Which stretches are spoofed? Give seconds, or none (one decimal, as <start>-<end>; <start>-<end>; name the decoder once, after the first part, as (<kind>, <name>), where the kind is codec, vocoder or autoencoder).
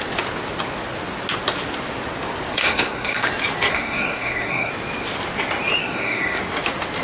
2.5-3.3 (codec, SNAC); 3.7-4.7; 5.8-6.4